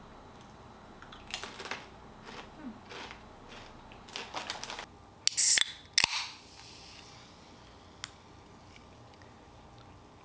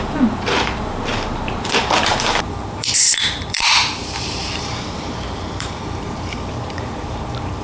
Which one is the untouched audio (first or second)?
first